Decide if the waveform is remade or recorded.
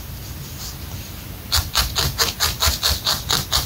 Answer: recorded